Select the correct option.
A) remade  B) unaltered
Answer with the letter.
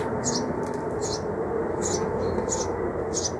B